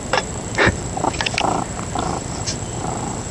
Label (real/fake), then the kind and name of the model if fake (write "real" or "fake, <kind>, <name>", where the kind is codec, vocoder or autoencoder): fake, vocoder, BigVGAN v2